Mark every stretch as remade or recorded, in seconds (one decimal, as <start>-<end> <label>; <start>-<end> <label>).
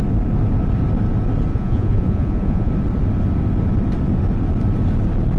0.0-1.5 recorded; 1.5-2.7 remade; 2.7-5.4 recorded